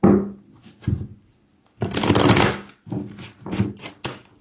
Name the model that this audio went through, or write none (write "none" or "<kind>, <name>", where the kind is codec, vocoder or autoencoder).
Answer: none